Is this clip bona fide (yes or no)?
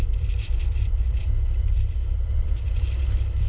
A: no